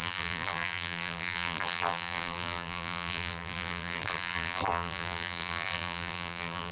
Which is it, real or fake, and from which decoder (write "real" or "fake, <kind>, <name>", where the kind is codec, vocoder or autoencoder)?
fake, vocoder, BigVGAN v2